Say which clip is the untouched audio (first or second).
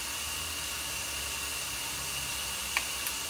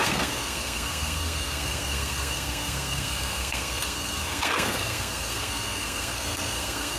first